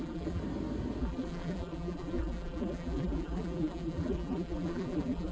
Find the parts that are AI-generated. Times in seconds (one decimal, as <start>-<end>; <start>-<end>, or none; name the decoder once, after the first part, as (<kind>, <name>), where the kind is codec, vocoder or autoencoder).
0.0-0.4 (vocoder, BigVGAN v2); 1.0-5.3

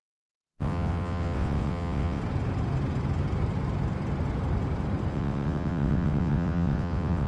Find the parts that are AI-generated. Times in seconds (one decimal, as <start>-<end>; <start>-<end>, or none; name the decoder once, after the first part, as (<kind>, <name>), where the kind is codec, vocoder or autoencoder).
0.0-2.2 (vocoder, WaveNeXt); 5.1-7.3

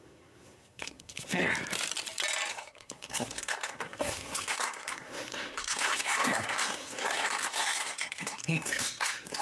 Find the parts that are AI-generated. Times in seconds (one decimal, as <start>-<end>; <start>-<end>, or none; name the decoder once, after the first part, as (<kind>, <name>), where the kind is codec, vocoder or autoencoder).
0.0-1.4 (codec, SNAC); 2.5-9.4

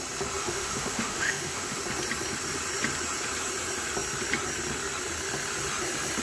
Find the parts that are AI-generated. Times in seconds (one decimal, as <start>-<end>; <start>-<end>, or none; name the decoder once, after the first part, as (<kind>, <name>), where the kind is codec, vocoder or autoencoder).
0.4-1.8 (autoencoder, DAC-VAE)

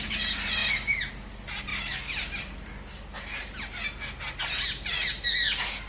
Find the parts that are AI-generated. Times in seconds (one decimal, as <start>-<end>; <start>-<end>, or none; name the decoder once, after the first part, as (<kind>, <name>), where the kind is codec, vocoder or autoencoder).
none